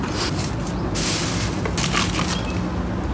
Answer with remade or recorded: recorded